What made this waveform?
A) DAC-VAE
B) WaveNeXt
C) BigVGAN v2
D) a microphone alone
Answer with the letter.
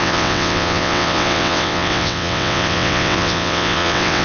B